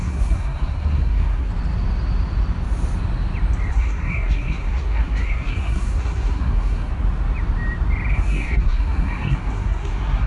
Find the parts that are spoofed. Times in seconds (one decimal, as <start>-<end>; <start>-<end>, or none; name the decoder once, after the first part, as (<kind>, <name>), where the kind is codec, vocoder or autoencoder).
0.0-1.5 (codec, SNAC); 3.7-6.9; 8.1-10.3